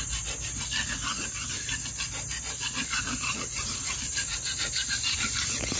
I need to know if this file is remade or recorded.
recorded